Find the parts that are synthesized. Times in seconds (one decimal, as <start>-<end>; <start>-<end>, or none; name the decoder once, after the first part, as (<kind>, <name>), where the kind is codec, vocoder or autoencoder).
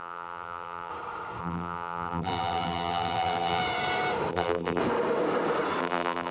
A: 0.0-0.9 (vocoder, BigVGAN v2); 1.4-3.6; 4.3-4.8; 5.8-6.3